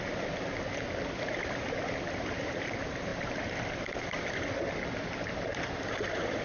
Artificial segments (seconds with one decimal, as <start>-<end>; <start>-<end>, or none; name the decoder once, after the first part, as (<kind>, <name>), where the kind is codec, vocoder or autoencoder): none